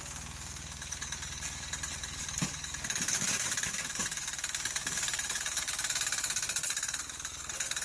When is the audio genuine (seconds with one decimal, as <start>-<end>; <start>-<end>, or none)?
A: none